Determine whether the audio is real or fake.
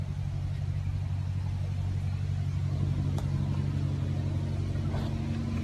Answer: real